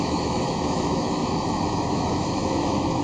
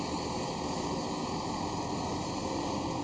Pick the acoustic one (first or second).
second